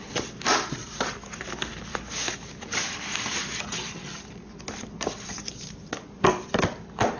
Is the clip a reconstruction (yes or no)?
no